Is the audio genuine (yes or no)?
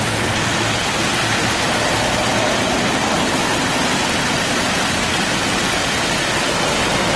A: yes